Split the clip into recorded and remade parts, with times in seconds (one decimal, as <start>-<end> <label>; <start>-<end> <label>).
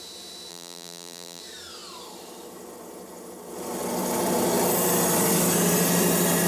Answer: 0.0-0.5 recorded; 0.5-1.4 remade; 1.4-6.5 recorded